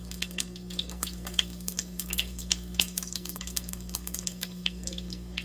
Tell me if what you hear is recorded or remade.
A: remade